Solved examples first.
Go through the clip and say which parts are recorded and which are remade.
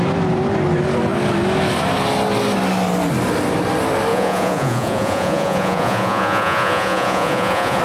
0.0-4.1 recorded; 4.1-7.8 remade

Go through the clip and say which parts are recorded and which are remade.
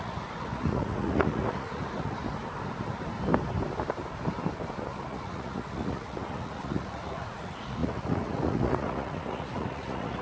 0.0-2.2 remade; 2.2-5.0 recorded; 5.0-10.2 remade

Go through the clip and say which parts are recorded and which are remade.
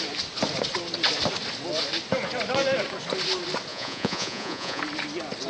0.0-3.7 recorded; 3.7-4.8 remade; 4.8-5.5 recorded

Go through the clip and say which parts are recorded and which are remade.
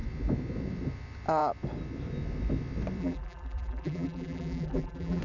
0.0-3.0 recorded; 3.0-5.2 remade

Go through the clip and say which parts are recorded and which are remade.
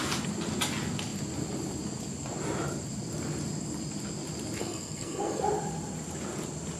0.0-4.6 recorded; 4.6-5.4 remade; 5.4-6.8 recorded